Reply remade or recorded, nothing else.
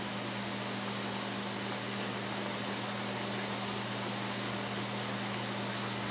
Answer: recorded